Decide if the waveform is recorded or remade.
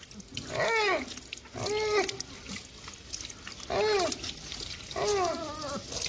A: recorded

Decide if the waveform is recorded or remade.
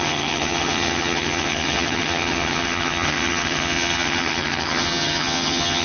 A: remade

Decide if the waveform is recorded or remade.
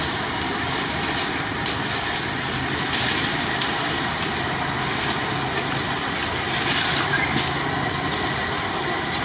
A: recorded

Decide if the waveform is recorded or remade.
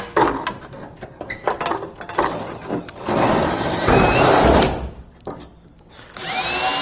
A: recorded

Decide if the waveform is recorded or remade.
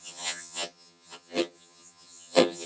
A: remade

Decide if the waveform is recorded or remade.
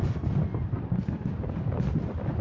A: recorded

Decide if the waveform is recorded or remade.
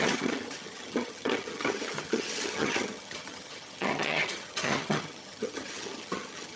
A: remade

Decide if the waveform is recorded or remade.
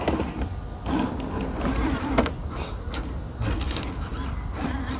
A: recorded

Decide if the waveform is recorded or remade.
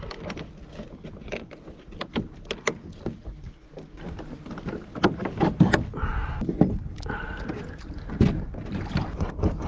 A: recorded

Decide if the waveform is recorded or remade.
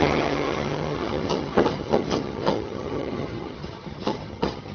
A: remade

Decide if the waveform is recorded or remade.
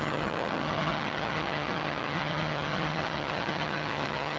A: remade